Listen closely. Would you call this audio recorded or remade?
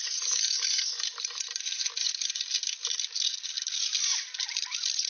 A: recorded